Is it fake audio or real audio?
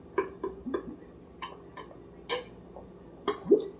real